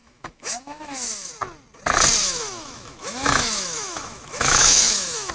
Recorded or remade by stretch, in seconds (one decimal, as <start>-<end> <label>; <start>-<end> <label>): 0.0-1.3 remade; 1.3-2.2 recorded; 2.2-5.3 remade